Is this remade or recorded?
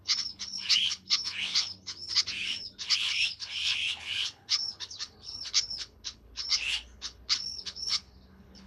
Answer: remade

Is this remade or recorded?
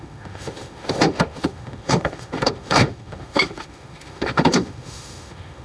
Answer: remade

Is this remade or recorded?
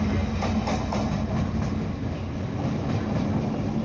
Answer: recorded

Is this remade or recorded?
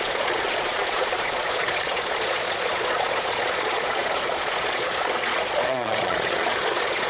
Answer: remade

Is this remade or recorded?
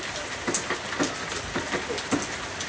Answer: recorded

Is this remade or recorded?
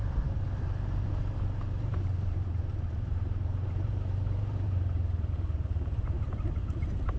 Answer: remade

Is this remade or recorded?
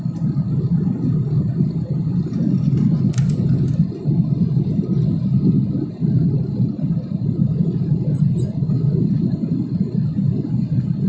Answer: recorded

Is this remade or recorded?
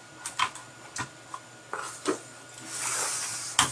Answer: recorded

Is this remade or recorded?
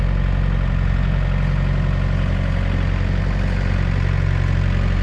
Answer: recorded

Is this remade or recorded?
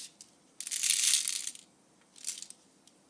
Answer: recorded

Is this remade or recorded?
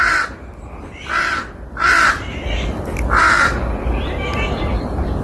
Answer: recorded